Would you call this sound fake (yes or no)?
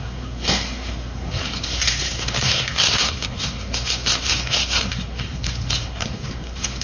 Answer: yes